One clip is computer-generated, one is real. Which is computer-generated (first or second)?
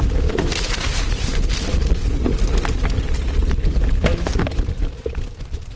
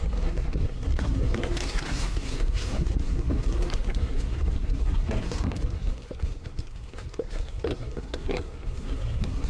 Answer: second